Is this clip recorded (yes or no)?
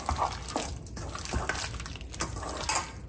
yes